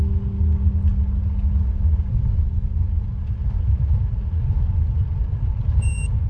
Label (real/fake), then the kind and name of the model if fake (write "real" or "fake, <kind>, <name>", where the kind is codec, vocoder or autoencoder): real